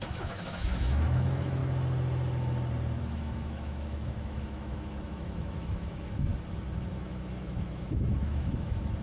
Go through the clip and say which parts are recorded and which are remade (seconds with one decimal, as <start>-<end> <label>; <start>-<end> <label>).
0.0-1.6 remade; 1.6-3.0 recorded; 3.0-6.3 remade; 6.3-6.9 recorded; 6.9-9.0 remade